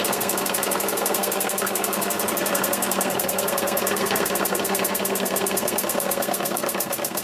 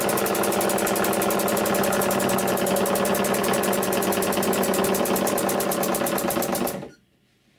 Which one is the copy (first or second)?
first